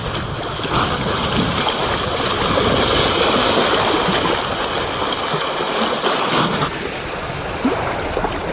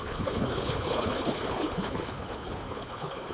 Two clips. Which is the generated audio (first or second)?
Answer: second